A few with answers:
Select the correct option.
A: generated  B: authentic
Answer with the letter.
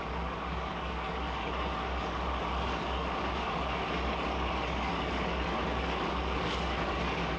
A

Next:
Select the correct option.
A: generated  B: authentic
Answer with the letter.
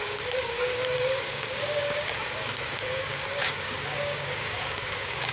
A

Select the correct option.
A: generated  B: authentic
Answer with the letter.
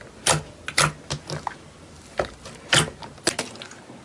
B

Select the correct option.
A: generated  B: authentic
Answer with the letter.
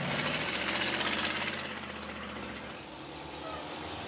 B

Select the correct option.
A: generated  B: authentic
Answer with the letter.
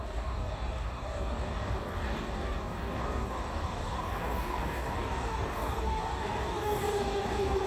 A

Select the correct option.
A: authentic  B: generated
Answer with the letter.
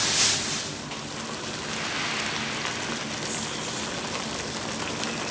A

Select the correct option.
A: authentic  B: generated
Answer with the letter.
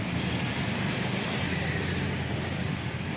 A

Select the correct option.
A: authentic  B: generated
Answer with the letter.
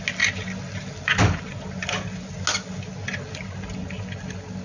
A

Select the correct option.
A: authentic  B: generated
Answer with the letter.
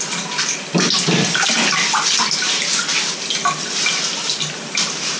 A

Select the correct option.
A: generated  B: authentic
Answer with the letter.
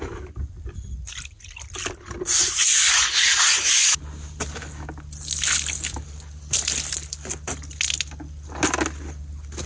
B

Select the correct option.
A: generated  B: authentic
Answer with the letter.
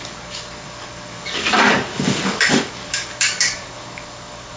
A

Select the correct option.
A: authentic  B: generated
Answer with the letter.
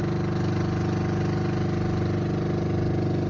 A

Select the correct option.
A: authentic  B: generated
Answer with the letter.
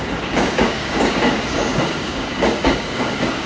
B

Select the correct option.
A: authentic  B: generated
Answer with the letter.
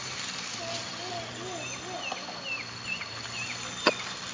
A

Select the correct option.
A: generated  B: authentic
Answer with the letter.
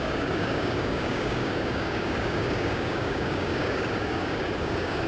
A